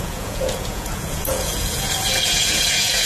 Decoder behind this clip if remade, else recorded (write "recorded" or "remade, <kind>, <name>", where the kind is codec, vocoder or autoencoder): remade, vocoder, Vocos